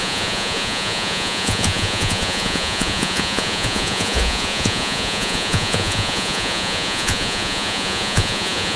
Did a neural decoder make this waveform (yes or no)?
yes